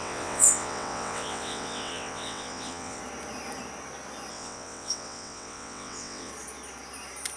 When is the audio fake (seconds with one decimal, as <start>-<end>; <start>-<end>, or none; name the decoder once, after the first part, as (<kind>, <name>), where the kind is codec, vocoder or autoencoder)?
0.0-3.0 (vocoder, WaveNeXt); 4.3-6.3